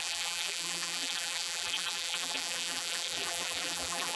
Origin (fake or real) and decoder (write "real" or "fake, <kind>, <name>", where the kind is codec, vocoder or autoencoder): fake, vocoder, BigVGAN v2